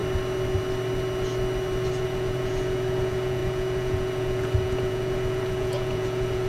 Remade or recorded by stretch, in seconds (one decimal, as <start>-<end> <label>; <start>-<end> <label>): 0.0-1.9 recorded; 1.9-6.5 remade